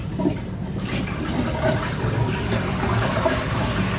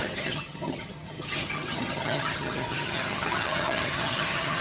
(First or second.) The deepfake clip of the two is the second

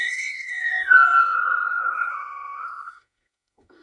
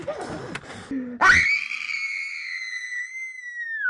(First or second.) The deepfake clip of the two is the first